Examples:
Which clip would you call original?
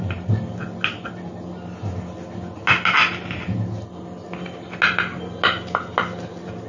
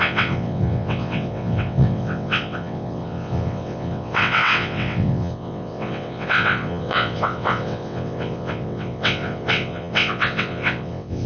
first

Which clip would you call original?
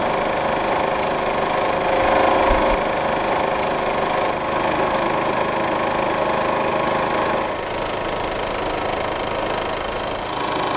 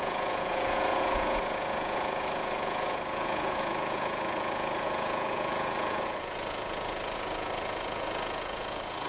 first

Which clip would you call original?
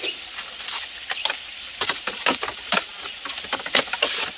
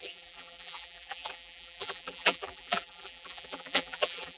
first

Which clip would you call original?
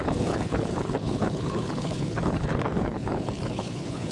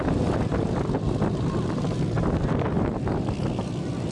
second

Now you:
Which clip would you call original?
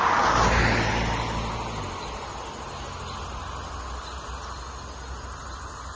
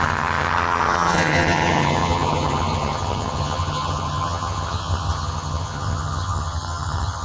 first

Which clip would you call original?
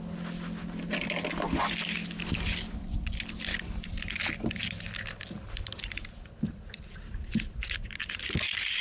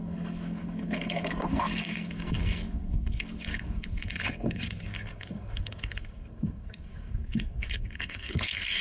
first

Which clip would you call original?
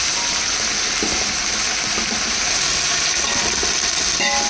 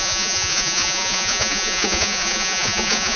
first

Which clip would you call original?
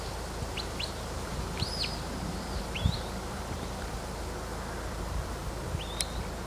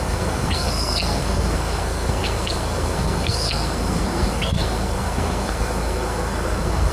first